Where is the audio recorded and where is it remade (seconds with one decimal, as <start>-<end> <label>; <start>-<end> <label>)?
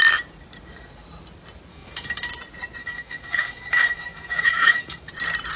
0.0-1.7 recorded; 1.7-2.3 remade; 2.3-2.8 recorded; 2.8-5.1 remade; 5.1-5.6 recorded